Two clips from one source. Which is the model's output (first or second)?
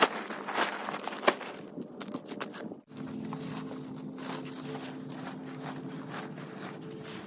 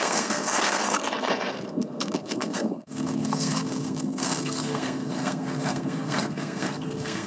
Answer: second